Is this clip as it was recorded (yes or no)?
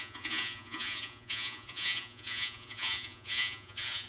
no